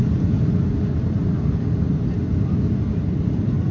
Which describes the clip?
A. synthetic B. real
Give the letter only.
B